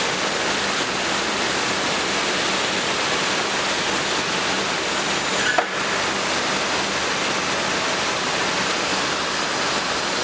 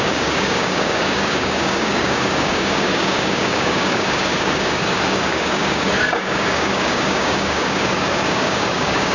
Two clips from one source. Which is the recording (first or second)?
first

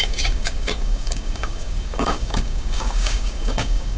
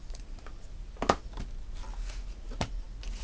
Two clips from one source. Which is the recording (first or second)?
second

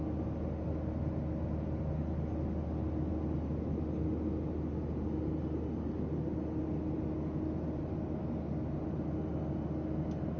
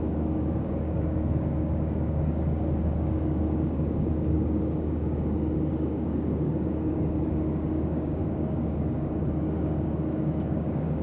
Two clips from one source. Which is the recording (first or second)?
first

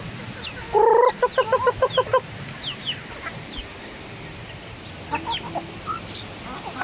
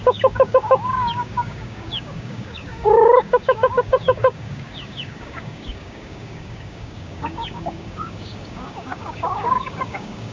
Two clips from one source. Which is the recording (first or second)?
first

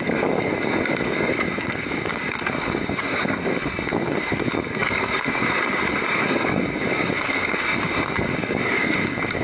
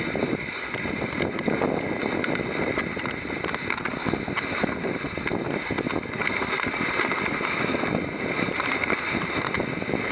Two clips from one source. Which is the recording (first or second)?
second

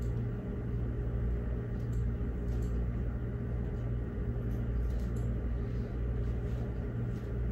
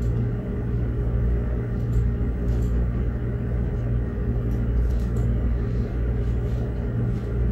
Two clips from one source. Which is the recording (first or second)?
first